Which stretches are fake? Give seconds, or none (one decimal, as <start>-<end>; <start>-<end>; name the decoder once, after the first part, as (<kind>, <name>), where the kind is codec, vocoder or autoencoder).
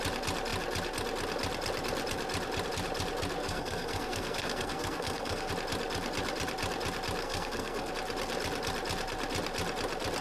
3.4-5.5 (codec, SNAC); 7.2-7.9